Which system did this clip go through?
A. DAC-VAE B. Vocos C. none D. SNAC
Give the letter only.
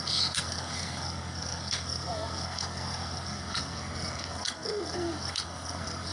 D